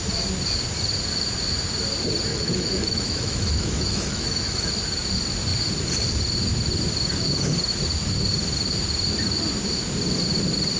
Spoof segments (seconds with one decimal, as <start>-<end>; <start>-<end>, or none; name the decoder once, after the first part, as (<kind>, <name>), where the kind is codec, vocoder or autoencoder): 2.3-4.7 (autoencoder, DAC-VAE)